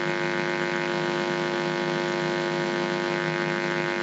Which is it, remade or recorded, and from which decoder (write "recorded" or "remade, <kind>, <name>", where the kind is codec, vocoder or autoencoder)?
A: recorded